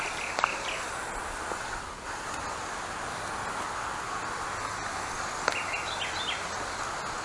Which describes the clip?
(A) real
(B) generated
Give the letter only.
A